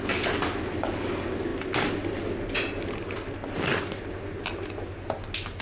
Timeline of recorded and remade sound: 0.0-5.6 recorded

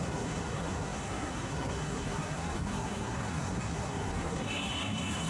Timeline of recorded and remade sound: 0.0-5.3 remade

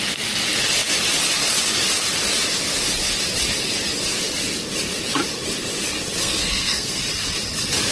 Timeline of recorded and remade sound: 0.0-6.2 recorded; 6.2-7.0 remade; 7.0-7.9 recorded

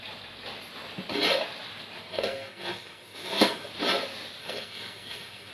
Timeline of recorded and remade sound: 0.0-2.1 recorded; 2.1-3.7 remade; 3.7-4.4 recorded; 4.4-5.5 remade

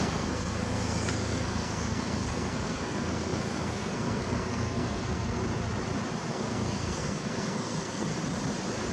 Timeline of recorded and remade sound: 0.0-5.4 remade; 5.4-6.3 recorded; 6.3-8.1 remade; 8.1-8.9 recorded